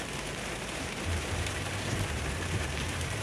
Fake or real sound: fake